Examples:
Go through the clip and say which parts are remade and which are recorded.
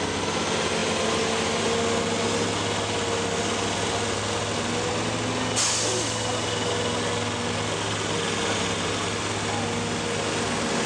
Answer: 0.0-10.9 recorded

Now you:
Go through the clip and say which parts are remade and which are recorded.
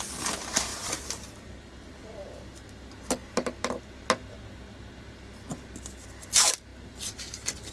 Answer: 0.0-0.7 recorded; 0.7-1.9 remade; 1.9-7.7 recorded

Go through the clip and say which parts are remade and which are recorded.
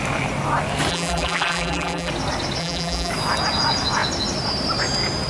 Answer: 0.0-0.9 recorded; 0.9-2.1 remade; 2.1-2.6 recorded; 2.6-3.1 remade; 3.1-5.3 recorded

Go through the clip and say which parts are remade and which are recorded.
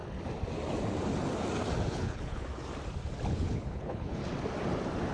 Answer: 0.0-1.9 recorded; 1.9-2.5 remade; 2.5-3.3 recorded; 3.3-4.2 remade; 4.2-5.1 recorded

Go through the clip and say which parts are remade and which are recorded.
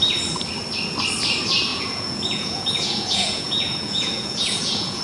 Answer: 0.0-1.7 recorded; 1.7-5.0 remade